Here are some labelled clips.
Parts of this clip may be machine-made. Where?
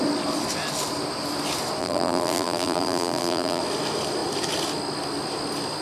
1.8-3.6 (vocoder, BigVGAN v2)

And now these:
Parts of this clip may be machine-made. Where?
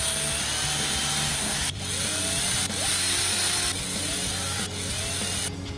1.3-1.8 (codec, SNAC)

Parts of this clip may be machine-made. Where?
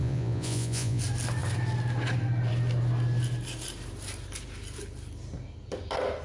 0.0-1.0 (vocoder, Vocos)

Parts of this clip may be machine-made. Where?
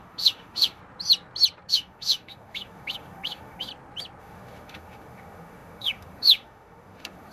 0.0-0.8 (autoencoder, DAC-VAE); 1.7-3.7; 4.2-7.3